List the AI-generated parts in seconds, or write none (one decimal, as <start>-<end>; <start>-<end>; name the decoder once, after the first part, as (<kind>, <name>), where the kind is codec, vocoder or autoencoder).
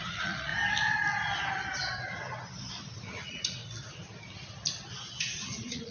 0.0-0.5 (vocoder, Vocos); 3.0-3.6; 5.2-5.9